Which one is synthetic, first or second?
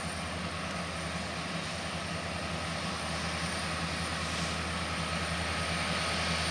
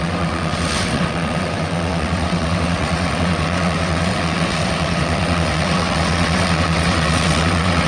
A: second